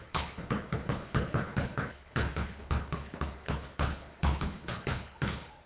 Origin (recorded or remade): remade